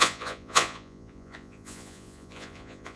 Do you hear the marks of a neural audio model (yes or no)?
yes